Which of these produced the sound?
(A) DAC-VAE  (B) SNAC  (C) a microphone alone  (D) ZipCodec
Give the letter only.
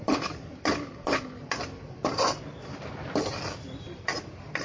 C